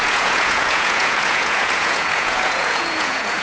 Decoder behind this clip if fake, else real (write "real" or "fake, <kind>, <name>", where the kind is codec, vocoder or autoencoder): fake, vocoder, Vocos